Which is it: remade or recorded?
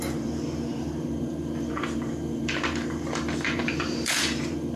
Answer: remade